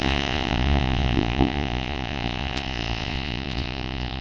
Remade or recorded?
remade